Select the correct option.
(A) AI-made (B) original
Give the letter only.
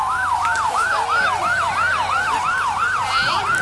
B